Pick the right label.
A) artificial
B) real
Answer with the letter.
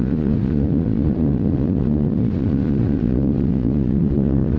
A